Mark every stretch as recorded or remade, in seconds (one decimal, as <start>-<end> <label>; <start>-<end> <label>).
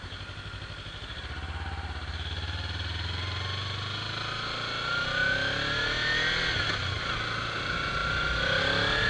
0.0-8.0 recorded; 8.0-8.6 remade; 8.6-9.1 recorded